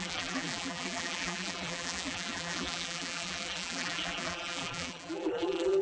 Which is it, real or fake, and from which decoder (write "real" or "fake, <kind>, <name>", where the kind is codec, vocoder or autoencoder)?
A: fake, vocoder, BigVGAN v2